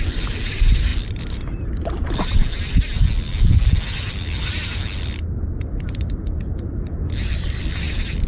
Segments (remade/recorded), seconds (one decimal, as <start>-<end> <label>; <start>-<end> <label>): 0.0-8.3 recorded